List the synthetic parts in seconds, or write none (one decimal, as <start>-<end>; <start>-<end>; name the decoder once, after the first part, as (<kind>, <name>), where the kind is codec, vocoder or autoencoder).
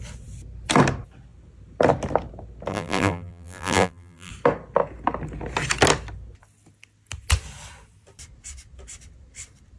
2.7-4.3 (vocoder, BigVGAN v2)